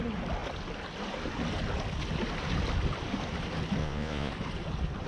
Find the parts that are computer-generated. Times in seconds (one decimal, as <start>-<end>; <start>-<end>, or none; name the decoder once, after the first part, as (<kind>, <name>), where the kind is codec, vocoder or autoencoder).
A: 3.8-4.3 (vocoder, Vocos)